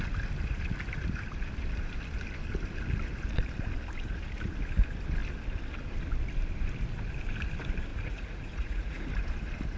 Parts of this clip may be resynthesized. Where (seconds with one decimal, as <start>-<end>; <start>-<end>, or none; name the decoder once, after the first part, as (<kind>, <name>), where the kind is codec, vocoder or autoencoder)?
7.9-9.1 (vocoder, Vocos)

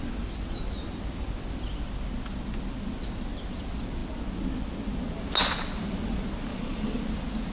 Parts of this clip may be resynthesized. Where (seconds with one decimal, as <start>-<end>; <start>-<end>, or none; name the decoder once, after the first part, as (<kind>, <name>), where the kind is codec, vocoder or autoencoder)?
6.5-7.0 (vocoder, Vocos)

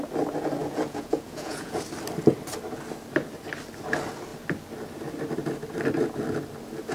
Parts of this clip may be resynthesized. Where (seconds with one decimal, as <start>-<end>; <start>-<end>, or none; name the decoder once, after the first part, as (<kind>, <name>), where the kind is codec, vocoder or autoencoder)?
0.6-1.8 (vocoder, Vocos)

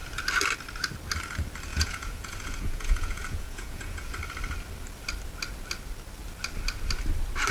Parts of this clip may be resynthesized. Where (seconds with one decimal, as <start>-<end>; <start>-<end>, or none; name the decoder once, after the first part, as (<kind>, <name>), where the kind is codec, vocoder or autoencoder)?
1.7-4.1 (vocoder, Vocos)